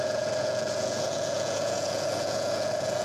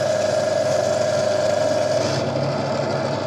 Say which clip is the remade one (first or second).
first